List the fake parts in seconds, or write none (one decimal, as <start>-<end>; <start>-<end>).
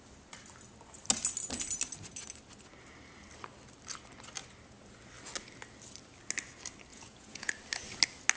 6.9-7.5